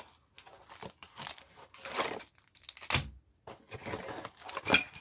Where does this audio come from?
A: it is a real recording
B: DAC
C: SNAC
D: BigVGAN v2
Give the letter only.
A